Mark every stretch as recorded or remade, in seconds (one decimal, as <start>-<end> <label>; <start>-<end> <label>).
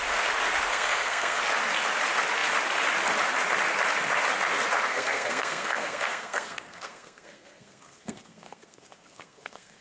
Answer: 0.0-0.7 recorded; 0.7-1.4 remade; 1.4-4.9 recorded; 4.9-9.8 remade